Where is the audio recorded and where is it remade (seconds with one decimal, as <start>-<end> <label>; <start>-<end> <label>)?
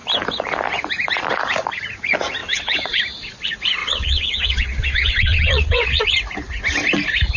0.0-2.4 recorded; 2.4-3.0 remade; 3.0-3.8 recorded; 3.8-6.0 remade; 6.0-7.4 recorded